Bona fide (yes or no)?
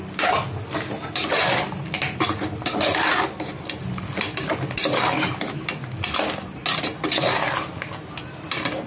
yes